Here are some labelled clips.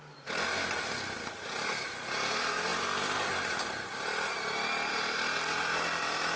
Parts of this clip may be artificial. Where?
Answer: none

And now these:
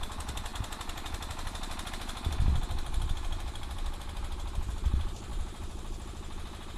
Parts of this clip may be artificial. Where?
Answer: none

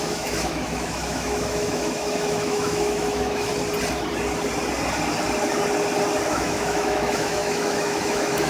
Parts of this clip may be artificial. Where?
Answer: 0.0-3.5 (autoencoder, DAC-VAE); 6.3-8.5

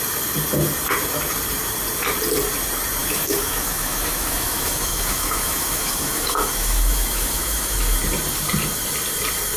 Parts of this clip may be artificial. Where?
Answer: 3.0-8.0 (autoencoder, DAC-VAE)

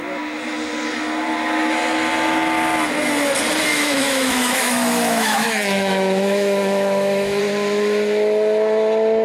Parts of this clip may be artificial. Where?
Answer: 3.7-7.4 (autoencoder, DAC-VAE)

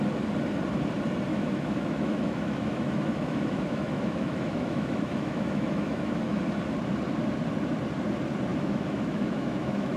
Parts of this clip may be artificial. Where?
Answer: 1.3-6.4 (autoencoder, DAC-VAE); 8.5-10.0